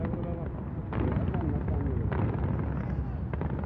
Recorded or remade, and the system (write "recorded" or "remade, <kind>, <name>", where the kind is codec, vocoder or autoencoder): recorded